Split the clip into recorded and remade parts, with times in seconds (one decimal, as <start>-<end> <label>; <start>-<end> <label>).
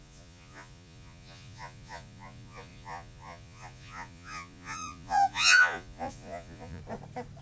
0.0-6.8 remade; 6.8-7.4 recorded